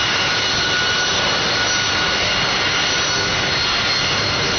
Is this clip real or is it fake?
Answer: real